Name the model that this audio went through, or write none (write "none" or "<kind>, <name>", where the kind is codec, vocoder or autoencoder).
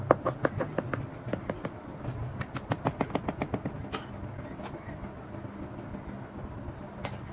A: none